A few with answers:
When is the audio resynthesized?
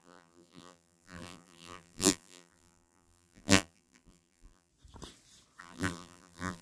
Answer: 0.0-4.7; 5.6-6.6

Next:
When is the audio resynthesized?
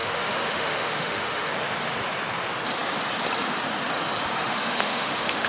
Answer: 0.0-1.5; 4.4-5.5